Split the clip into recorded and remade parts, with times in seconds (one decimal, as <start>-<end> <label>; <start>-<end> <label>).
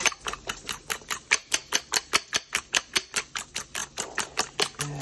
0.0-5.0 recorded